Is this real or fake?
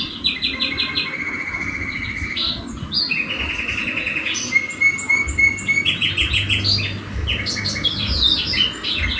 real